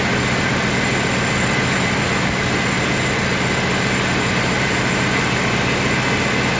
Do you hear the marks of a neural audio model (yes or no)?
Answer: no